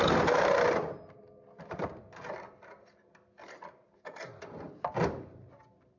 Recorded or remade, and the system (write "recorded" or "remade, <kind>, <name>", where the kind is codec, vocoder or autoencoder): recorded